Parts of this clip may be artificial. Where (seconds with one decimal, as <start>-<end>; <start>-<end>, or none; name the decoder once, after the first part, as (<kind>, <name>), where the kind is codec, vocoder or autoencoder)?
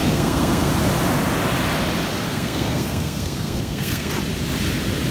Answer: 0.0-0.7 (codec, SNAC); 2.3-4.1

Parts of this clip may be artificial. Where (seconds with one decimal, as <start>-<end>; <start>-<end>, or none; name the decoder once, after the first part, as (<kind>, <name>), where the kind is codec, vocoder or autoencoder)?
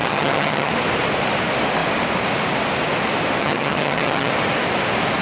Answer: 0.0-0.7 (vocoder, HiFi-GAN); 3.4-4.3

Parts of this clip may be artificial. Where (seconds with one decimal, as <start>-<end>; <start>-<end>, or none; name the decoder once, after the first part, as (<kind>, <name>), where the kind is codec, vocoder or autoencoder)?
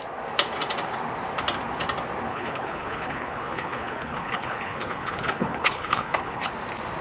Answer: 2.3-6.5 (codec, HILCodec)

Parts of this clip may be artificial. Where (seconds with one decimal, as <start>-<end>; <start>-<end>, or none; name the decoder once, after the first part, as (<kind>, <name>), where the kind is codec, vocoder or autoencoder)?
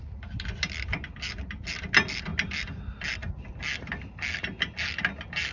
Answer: none